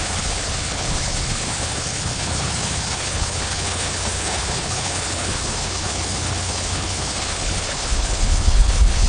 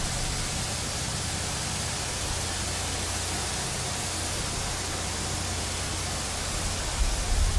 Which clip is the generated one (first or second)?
first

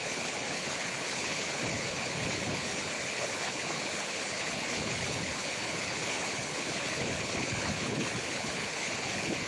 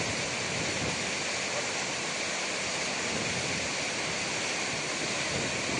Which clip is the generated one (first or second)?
first